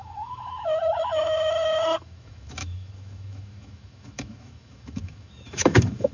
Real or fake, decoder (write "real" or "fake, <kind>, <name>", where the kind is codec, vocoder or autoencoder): fake, autoencoder, DAC-VAE